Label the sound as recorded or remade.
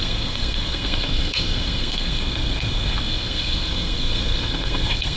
remade